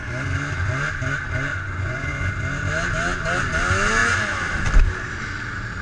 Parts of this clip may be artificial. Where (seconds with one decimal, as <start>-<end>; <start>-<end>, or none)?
1.5-2.3